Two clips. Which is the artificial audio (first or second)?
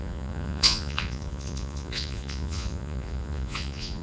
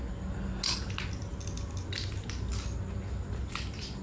first